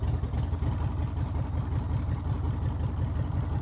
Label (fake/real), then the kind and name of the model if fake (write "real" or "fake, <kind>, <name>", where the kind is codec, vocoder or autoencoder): real